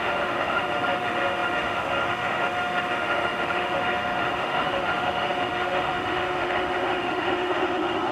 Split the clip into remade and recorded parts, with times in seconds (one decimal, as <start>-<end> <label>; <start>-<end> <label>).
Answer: 0.0-8.1 remade